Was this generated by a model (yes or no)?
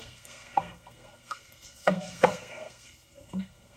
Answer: yes